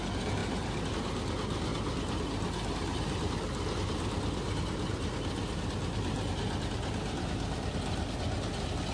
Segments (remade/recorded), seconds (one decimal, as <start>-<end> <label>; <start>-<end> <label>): 0.0-8.9 recorded